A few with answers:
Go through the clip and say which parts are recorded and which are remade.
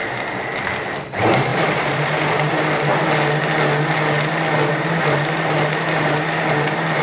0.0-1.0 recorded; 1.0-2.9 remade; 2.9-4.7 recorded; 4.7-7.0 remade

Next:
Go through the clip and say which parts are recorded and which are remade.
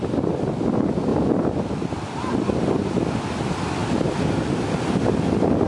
0.0-1.1 recorded; 1.1-1.9 remade; 1.9-2.3 recorded; 2.3-3.4 remade; 3.4-5.7 recorded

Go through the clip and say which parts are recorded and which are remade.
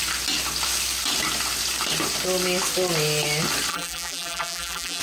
0.0-3.7 recorded; 3.7-5.0 remade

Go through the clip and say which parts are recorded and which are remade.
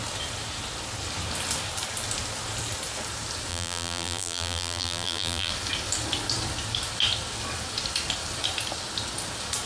0.0-3.5 recorded; 3.5-5.5 remade; 5.5-9.7 recorded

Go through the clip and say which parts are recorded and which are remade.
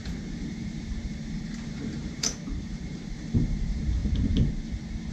0.0-4.0 remade; 4.0-5.1 recorded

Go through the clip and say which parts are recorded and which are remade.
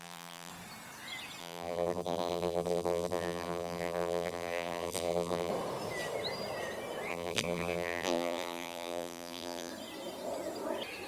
0.0-0.5 remade; 0.5-1.4 recorded; 1.4-5.5 remade; 5.5-7.1 recorded; 7.1-9.7 remade; 9.7-11.1 recorded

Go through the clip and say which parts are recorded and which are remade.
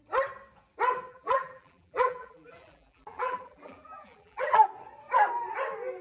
0.0-1.1 recorded; 1.1-4.7 remade; 4.7-6.0 recorded